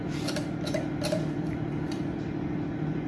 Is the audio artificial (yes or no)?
yes